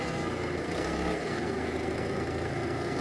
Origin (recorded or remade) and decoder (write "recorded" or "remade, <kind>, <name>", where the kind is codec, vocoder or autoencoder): remade, codec, SNAC